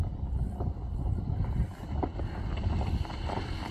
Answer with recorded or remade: recorded